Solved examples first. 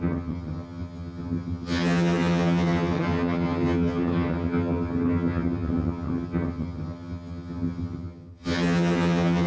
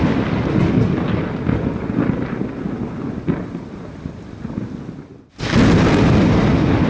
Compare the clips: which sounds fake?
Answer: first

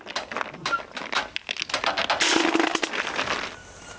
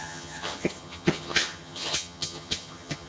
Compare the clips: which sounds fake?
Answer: second